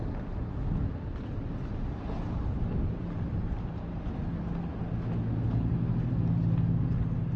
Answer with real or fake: real